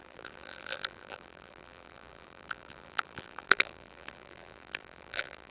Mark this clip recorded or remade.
remade